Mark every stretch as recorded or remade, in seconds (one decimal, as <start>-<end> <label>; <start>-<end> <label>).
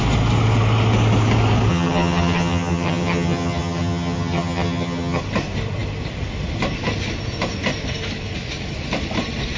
0.0-1.7 recorded; 1.7-5.2 remade; 5.2-9.6 recorded